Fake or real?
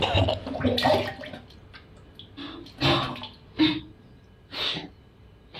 real